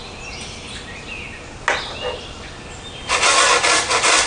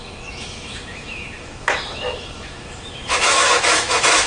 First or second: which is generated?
second